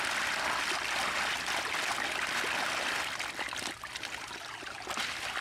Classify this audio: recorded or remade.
recorded